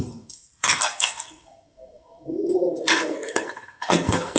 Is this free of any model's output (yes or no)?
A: no